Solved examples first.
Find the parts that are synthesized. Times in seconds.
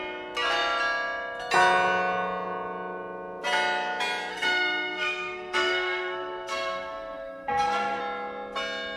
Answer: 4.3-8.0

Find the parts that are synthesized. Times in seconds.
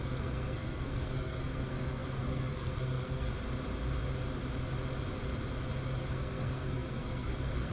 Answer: 0.0-3.3; 6.1-7.7